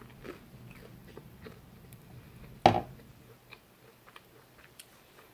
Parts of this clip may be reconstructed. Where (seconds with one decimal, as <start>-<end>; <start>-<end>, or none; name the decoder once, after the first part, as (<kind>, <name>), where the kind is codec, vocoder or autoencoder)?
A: 1.0-2.1 (vocoder, BigVGAN v2)